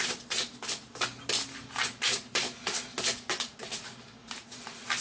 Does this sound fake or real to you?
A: real